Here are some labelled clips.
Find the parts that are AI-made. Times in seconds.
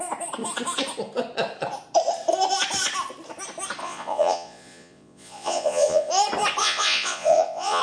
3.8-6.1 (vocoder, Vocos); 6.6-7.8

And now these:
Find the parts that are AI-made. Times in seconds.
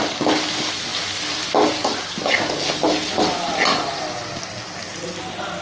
none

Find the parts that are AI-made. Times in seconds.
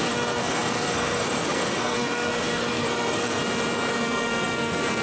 0.0-3.4 (codec, SNAC); 3.9-5.0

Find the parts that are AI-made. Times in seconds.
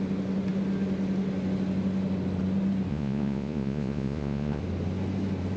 2.9-4.6 (vocoder, Vocos)